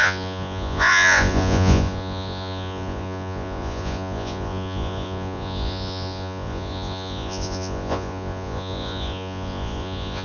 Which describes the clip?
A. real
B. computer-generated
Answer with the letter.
B